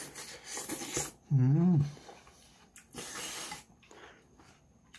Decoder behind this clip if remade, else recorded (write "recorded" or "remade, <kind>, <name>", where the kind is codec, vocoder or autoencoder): recorded